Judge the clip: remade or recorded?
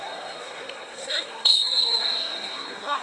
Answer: remade